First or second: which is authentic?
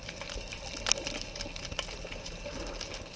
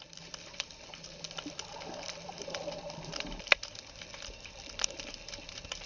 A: first